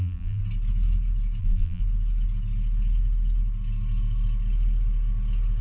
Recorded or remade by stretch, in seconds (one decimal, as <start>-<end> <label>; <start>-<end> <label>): 0.0-0.4 remade; 0.4-1.4 recorded; 1.4-1.8 remade; 1.8-5.6 recorded